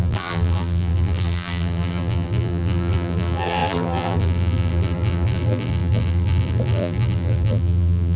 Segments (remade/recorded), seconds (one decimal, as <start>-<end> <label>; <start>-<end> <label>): 0.0-8.2 remade